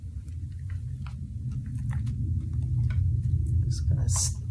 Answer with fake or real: real